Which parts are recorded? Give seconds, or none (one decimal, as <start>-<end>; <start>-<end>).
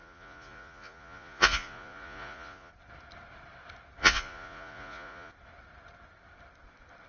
2.7-4.0; 5.3-7.1